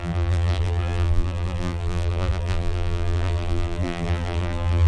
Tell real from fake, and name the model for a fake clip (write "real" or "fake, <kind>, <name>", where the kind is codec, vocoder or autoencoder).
fake, vocoder, BigVGAN v2